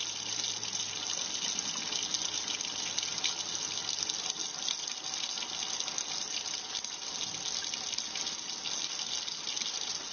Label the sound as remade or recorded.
recorded